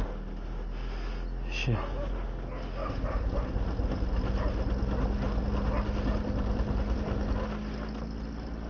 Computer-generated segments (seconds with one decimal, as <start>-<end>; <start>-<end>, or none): none